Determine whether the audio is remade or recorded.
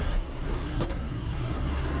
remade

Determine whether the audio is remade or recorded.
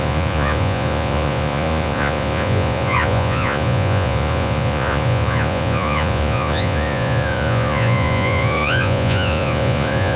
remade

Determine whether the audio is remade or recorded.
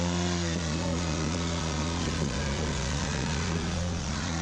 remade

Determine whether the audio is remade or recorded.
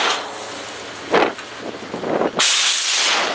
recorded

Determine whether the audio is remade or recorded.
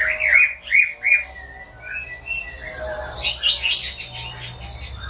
recorded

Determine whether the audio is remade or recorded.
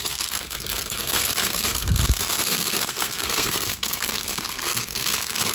remade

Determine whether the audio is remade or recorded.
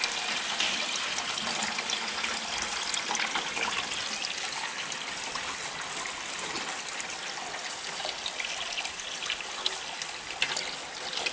recorded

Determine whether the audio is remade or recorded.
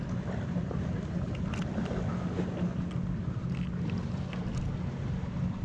recorded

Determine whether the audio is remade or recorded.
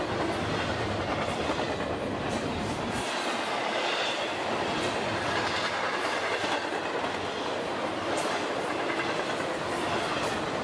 recorded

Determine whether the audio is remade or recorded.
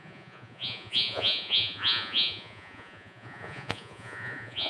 remade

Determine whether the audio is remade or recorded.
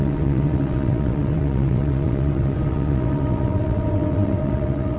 remade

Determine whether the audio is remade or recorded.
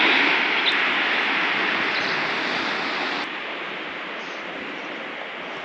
recorded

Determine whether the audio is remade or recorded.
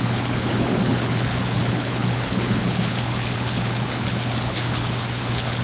remade